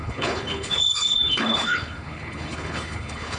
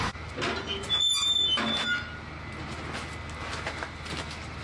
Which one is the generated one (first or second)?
first